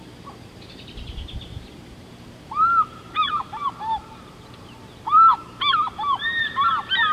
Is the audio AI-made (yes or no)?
yes